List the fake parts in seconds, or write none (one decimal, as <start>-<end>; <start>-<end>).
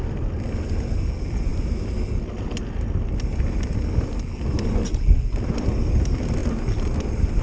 none